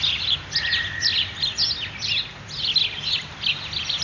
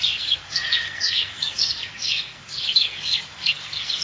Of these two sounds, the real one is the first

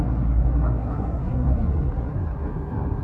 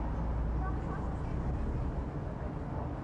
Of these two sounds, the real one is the second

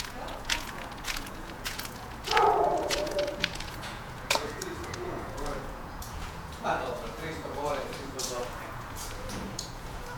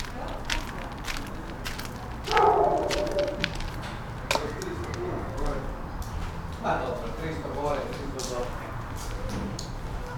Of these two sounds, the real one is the second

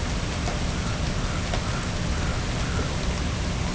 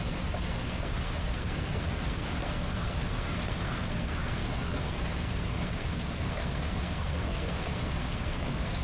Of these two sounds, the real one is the first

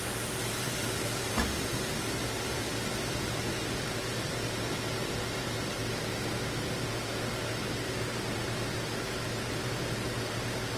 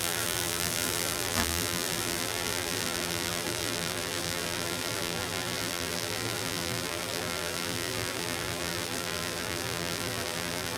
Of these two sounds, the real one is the first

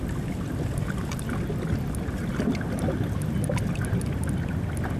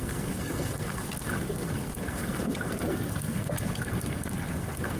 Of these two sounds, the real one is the first